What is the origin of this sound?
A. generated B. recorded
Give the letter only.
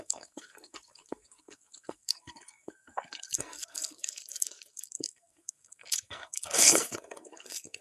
A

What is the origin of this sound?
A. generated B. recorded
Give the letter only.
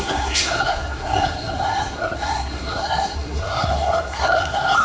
A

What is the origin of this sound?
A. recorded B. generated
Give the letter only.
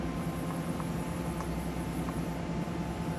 A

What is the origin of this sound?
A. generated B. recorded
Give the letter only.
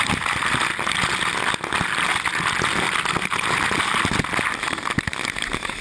B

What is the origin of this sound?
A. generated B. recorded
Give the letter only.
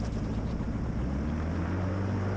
A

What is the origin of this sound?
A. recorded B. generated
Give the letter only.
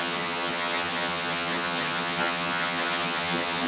B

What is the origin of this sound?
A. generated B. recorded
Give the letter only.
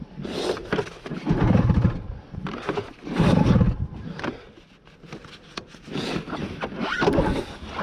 B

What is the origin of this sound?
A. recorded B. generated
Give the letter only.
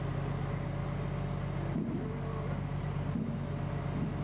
A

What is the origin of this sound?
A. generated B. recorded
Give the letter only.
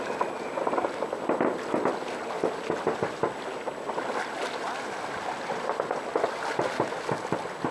B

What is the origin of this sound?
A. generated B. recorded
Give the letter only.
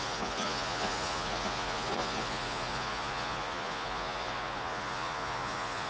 A